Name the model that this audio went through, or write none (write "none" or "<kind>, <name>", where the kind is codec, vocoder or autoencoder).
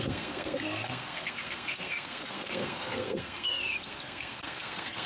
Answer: codec, SNAC